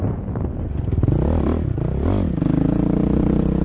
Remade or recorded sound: recorded